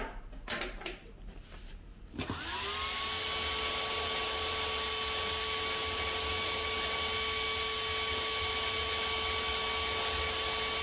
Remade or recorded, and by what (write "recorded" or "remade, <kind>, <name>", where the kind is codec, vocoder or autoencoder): recorded